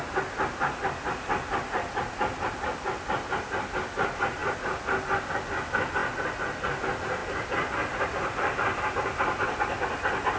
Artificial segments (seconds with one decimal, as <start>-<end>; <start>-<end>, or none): none